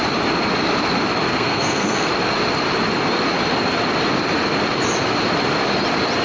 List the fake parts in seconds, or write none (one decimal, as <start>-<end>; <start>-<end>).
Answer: 1.3-2.1